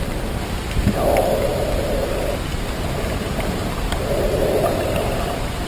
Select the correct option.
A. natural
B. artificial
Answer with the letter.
A